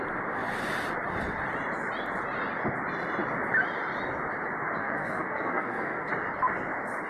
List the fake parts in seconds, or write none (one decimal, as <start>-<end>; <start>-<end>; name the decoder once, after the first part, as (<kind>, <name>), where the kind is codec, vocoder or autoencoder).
4.8-6.1 (codec, SNAC)